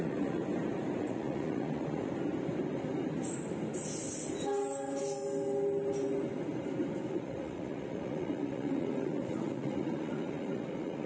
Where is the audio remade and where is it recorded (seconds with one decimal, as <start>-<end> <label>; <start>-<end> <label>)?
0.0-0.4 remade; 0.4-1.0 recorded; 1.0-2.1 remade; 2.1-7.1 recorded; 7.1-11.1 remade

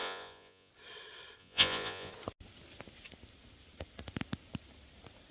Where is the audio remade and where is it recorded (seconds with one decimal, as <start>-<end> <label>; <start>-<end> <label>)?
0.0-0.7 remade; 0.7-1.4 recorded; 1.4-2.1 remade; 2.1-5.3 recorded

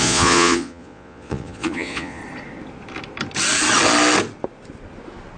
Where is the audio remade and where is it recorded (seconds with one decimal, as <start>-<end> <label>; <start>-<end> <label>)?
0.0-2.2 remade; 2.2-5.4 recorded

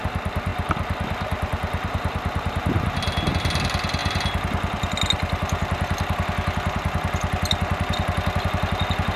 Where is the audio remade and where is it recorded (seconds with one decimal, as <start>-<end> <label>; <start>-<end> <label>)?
0.0-9.2 recorded

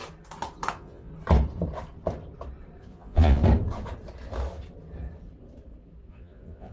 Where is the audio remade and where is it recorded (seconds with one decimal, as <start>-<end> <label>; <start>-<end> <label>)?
0.0-0.7 recorded; 0.7-1.1 remade; 1.1-2.8 recorded; 2.8-3.4 remade; 3.4-6.1 recorded; 6.1-6.7 remade

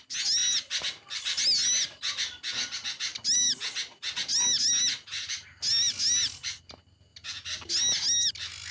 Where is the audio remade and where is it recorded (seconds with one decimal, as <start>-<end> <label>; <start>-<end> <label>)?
0.0-8.7 recorded

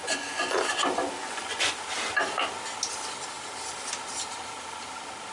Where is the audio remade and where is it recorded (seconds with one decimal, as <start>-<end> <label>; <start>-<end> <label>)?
0.0-0.6 remade; 0.6-1.2 recorded; 1.2-1.8 remade; 1.8-5.3 recorded

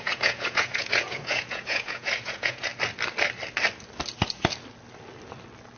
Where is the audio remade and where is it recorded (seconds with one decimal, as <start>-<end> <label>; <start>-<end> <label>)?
0.0-2.7 remade; 2.7-5.8 recorded